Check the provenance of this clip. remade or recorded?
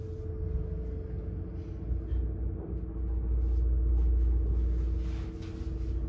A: recorded